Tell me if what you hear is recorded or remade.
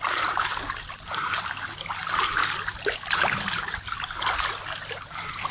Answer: recorded